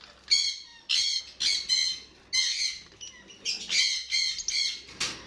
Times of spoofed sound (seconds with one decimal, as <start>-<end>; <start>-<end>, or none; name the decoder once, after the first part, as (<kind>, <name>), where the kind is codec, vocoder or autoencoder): none